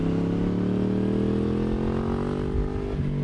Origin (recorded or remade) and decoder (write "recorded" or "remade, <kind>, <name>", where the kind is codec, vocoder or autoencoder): recorded